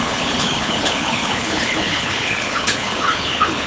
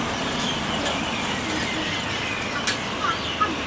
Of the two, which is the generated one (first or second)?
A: first